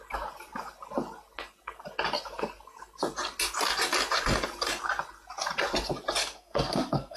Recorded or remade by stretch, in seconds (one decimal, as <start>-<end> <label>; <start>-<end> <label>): 0.0-6.2 recorded; 6.2-7.2 remade